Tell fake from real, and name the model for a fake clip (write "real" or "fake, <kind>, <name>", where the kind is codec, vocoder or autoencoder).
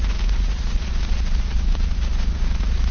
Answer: fake, vocoder, Vocos